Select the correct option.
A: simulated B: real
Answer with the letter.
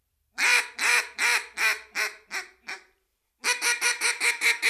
A